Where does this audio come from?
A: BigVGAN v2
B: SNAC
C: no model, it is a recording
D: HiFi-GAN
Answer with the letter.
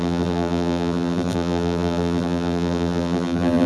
A